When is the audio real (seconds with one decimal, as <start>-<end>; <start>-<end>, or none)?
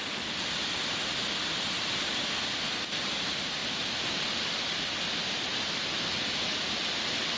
0.0-7.4